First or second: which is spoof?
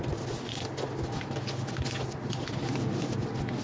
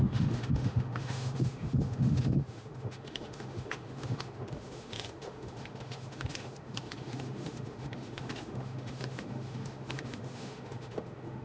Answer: second